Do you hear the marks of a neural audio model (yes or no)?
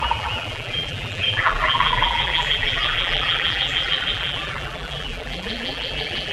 yes